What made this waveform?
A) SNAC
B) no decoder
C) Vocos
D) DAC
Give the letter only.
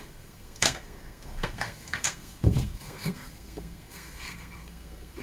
A